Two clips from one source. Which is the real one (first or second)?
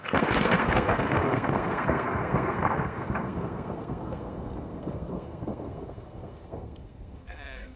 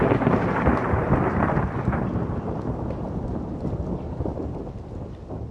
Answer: second